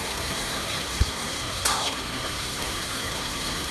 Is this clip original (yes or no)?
no